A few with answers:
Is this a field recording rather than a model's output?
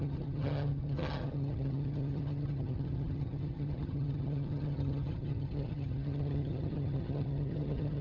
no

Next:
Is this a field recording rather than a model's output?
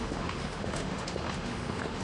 no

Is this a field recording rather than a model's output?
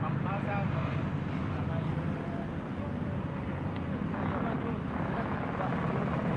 yes